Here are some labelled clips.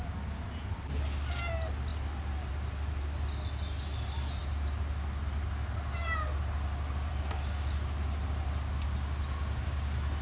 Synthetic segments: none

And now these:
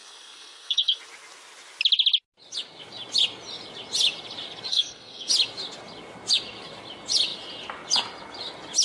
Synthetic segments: 0.0-1.0 (codec, SNAC); 4.7-5.3

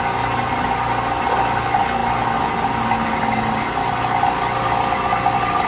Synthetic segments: none